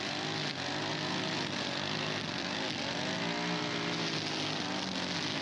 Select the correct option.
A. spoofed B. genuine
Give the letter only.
B